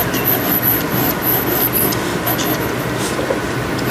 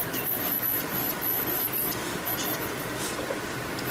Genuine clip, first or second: first